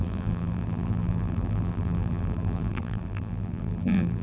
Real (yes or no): no